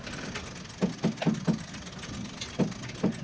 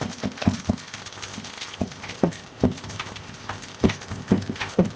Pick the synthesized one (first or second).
second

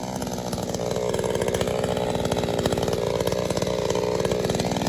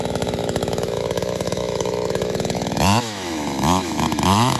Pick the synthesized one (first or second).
second